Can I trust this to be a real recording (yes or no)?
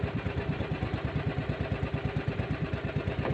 yes